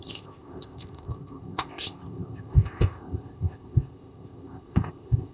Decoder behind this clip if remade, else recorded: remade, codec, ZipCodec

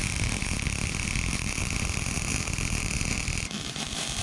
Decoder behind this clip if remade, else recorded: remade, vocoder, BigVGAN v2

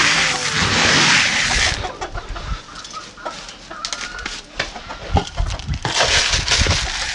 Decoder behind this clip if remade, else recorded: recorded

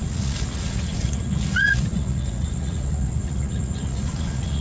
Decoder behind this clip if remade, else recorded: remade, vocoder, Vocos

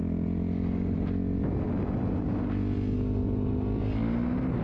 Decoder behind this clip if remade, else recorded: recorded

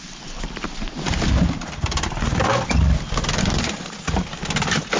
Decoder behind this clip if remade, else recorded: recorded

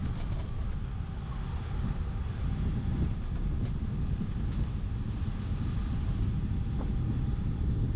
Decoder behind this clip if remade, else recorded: recorded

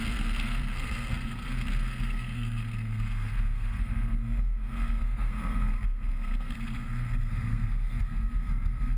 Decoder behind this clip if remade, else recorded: remade, codec, SNAC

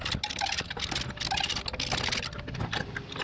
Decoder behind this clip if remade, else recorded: recorded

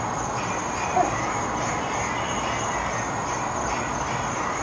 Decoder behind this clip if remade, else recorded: recorded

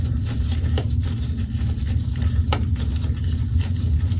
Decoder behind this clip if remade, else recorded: recorded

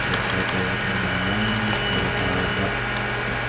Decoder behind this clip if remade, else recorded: recorded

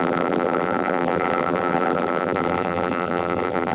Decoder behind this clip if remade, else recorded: remade, vocoder, BigVGAN v2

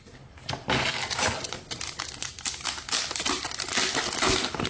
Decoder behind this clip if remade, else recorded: recorded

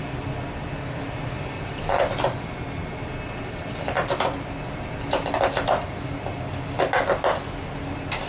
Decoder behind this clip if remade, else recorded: recorded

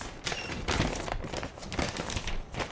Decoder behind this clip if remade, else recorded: recorded